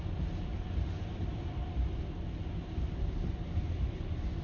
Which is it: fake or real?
real